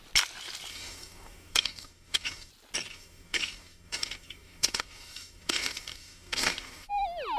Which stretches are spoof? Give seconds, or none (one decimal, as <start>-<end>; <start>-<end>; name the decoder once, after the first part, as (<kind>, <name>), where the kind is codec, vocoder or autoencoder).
0.7-2.5 (codec, DAC); 2.9-6.9